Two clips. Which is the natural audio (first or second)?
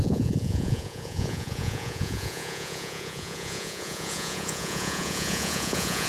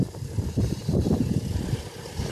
second